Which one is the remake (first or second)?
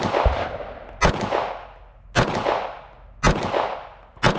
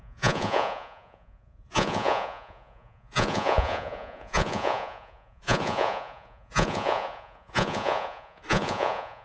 second